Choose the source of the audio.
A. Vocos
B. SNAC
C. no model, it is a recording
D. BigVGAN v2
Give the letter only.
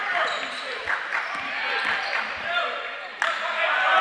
C